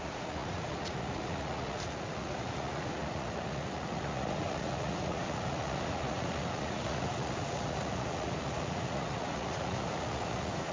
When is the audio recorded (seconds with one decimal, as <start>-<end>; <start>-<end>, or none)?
none